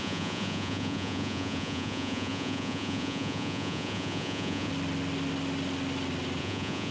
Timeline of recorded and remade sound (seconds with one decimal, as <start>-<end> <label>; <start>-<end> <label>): 0.0-4.7 remade; 4.7-6.4 recorded; 6.4-6.9 remade